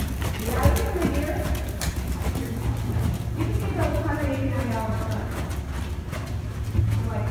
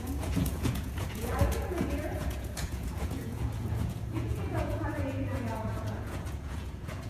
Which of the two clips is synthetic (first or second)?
second